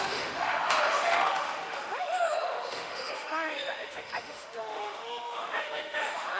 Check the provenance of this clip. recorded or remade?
remade